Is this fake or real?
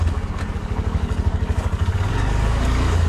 fake